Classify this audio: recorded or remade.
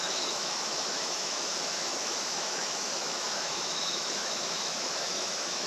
remade